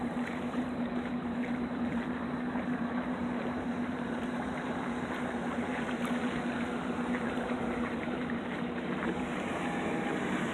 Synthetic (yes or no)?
yes